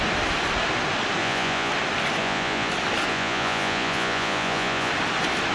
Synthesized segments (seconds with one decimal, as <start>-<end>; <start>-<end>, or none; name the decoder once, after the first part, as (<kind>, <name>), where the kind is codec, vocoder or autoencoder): 1.2-1.7 (vocoder, Vocos); 2.2-2.7; 3.1-4.9